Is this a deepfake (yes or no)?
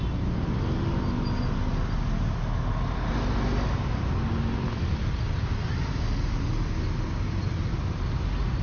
no